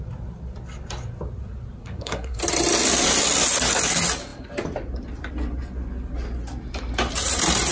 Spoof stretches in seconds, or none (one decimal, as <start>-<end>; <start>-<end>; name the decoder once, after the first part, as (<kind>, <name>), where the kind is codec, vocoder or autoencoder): 1.8-2.4 (codec, SNAC)